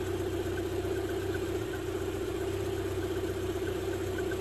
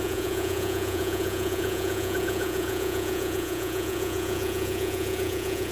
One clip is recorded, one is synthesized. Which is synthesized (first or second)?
second